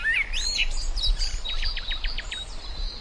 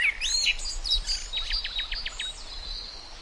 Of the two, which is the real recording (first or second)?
second